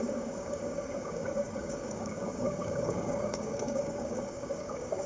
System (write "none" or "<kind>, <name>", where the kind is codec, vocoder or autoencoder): codec, DAC